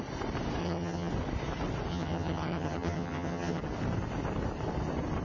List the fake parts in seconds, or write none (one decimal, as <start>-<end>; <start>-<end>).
0.6-1.1; 1.9-3.6